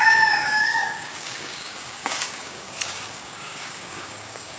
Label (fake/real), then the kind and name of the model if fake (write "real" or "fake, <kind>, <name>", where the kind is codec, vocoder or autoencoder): fake, codec, DAC